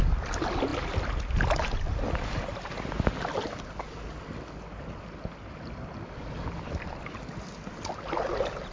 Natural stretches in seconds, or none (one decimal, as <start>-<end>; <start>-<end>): 0.0-8.7